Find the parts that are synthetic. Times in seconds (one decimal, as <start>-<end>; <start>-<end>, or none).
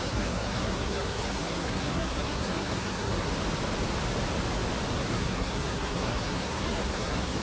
0.0-3.3; 4.9-7.4